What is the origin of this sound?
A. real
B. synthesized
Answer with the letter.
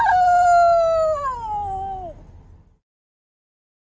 A